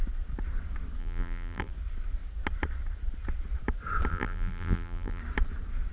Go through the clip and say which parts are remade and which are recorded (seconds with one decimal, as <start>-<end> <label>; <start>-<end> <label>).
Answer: 0.0-1.0 recorded; 1.0-1.7 remade; 1.7-4.1 recorded; 4.1-5.2 remade; 5.2-5.9 recorded